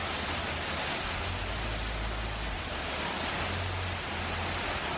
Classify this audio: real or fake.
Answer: real